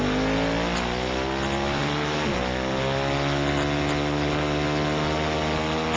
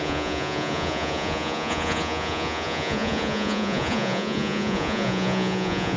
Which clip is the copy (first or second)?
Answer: second